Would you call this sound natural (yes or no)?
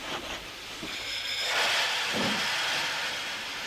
yes